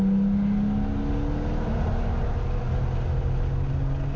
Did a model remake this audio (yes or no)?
no